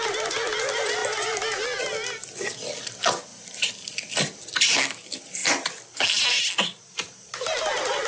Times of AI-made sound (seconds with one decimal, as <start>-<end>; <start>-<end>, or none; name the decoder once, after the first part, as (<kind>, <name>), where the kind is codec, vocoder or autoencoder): none